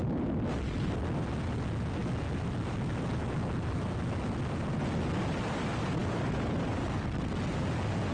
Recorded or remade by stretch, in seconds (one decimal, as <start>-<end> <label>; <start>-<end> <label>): 0.0-8.1 recorded